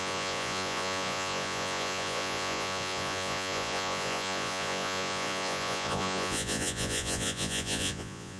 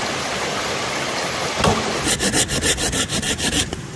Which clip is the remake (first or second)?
first